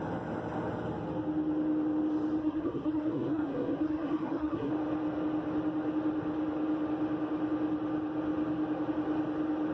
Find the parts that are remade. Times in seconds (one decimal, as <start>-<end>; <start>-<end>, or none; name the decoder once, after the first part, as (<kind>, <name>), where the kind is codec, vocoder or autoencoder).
2.4-4.7 (codec, SNAC)

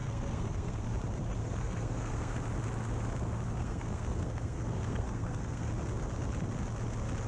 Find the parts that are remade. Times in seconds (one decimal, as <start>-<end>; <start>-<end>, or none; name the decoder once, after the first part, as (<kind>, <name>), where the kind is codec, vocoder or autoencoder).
0.0-0.8 (codec, SNAC); 1.4-2.4; 3.6-5.7

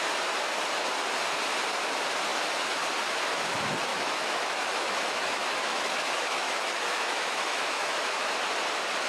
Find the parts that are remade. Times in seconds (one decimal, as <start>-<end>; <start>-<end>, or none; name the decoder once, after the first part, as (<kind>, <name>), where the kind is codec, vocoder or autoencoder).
3.9-8.3 (autoencoder, DAC-VAE)

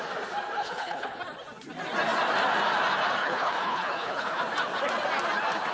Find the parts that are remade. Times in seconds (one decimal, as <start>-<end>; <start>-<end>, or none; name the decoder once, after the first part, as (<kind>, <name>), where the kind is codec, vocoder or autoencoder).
0.6-1.2 (codec, HILCodec); 3.2-4.4

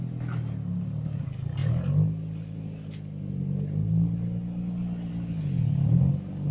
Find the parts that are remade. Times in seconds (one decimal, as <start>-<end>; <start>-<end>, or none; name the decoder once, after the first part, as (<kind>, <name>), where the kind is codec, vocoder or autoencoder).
none

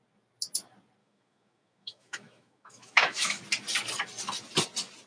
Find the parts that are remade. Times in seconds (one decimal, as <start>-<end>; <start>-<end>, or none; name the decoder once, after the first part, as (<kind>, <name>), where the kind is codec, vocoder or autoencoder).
1.0-3.4 (autoencoder, DAC-VAE)

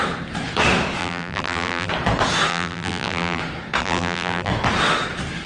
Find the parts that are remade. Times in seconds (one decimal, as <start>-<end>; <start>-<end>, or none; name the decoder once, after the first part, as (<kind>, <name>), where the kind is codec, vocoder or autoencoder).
1.0-1.9 (vocoder, BigVGAN v2); 2.5-3.4; 3.8-4.5

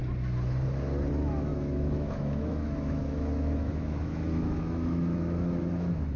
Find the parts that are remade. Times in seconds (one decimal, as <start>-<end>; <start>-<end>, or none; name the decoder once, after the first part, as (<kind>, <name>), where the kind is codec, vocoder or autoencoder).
1.1-6.2 (autoencoder, DAC-VAE)